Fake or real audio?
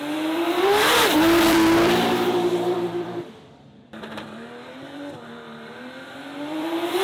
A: fake